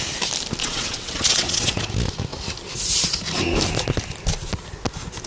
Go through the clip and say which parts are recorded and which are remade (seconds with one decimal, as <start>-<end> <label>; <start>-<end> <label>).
0.0-0.6 recorded; 0.6-1.8 remade; 1.8-5.3 recorded